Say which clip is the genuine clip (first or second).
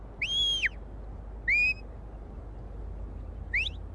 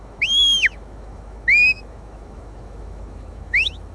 first